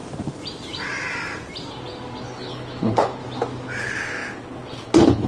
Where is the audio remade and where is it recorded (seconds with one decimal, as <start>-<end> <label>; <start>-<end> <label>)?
0.0-2.2 recorded; 2.2-3.2 remade; 3.2-3.8 recorded; 3.8-5.3 remade